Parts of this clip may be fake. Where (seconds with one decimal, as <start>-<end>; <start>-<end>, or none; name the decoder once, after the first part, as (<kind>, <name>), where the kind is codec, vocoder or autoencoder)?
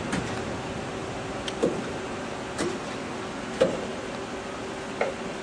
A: none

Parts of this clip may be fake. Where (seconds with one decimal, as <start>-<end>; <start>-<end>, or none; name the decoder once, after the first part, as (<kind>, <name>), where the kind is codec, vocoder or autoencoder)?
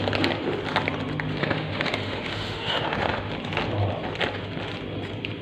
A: 1.4-3.3 (autoencoder, DAC-VAE)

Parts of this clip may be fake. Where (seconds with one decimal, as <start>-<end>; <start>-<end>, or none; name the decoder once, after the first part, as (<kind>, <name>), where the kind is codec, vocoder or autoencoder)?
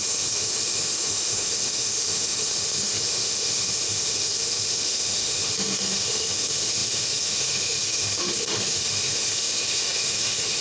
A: 0.0-10.6 (autoencoder, DAC-VAE)